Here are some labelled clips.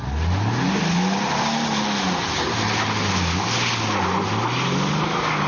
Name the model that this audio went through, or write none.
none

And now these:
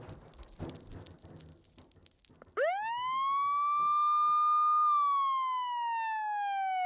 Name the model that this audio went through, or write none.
none